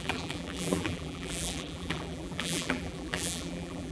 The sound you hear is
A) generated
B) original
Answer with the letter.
A